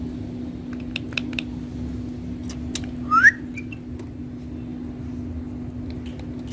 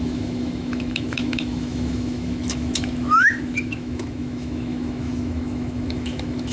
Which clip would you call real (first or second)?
first